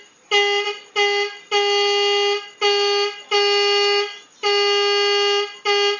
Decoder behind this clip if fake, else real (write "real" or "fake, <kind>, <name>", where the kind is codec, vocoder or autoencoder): real